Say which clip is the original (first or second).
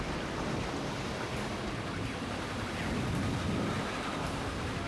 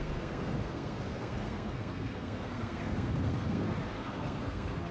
first